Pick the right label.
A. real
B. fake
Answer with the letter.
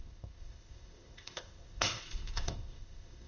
B